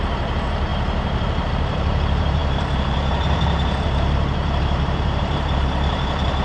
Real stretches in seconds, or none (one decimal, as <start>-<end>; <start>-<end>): none